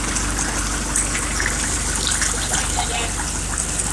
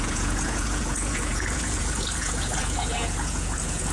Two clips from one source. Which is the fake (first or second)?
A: second